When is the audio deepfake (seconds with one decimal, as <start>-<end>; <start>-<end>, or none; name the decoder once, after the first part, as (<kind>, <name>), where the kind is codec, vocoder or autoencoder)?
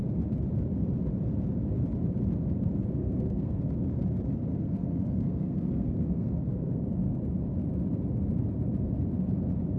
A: 3.0-3.6 (codec, SNAC); 4.5-6.8